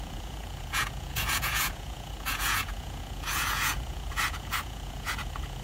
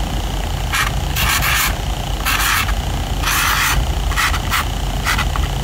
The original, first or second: second